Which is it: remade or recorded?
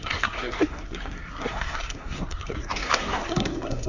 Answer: remade